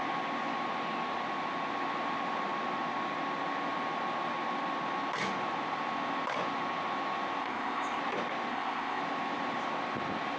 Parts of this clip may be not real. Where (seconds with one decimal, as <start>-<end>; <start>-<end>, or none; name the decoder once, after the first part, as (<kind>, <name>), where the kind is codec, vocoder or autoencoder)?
7.4-8.0 (codec, ZipCodec); 8.5-9.0